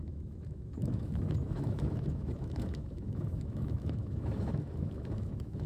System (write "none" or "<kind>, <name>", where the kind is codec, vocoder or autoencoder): autoencoder, DAC-VAE